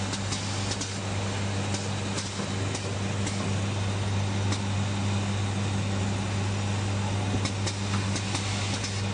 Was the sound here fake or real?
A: real